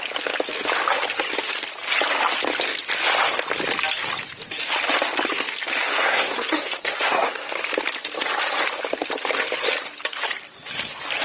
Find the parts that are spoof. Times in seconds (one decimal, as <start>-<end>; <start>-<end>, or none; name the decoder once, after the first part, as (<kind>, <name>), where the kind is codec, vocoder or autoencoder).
5.9-7.6 (codec, SNAC)